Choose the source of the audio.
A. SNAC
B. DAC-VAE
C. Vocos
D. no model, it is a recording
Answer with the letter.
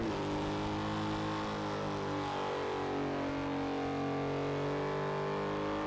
D